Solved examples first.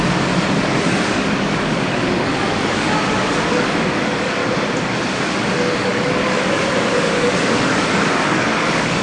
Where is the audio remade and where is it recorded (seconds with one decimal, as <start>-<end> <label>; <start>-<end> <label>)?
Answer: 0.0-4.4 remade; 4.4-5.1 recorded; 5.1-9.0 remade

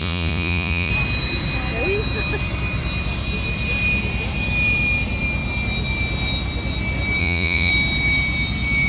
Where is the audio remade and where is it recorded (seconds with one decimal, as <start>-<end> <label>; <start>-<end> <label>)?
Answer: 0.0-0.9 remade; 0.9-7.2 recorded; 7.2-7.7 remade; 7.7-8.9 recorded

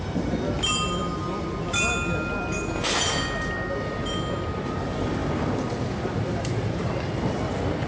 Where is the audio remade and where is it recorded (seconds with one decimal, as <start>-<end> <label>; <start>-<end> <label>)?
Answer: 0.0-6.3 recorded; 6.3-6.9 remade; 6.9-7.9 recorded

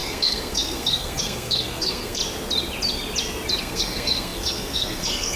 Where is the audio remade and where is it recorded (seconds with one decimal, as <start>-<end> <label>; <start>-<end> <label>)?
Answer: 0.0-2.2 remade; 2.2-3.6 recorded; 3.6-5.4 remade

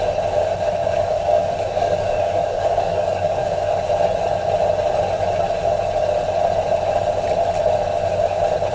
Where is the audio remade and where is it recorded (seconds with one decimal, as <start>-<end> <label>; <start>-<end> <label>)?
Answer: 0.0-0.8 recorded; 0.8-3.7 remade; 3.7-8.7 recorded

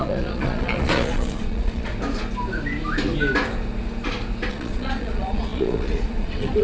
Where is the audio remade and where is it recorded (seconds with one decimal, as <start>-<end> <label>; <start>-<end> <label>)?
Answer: 0.0-1.9 remade; 1.9-4.5 recorded; 4.5-6.6 remade

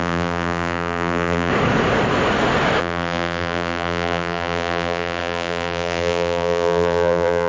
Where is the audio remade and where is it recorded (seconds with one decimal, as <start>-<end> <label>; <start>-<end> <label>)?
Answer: 0.0-1.5 remade; 1.5-2.8 recorded; 2.8-7.5 remade